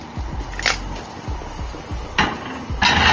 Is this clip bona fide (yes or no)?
yes